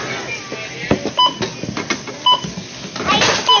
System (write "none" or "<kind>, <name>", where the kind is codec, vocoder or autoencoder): none